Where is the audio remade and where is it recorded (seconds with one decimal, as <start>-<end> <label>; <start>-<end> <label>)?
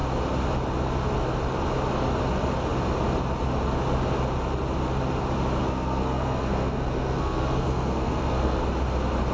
0.0-5.6 recorded; 5.6-8.6 remade; 8.6-9.3 recorded